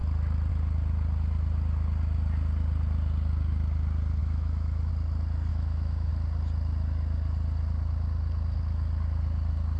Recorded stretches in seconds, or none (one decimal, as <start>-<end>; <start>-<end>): 0.0-4.2; 4.9-5.5; 6.1-9.8

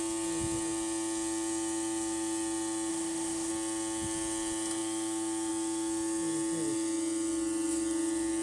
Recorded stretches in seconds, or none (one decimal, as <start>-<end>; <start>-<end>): 0.0-2.9; 3.5-8.4